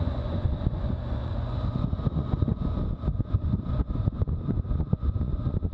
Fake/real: fake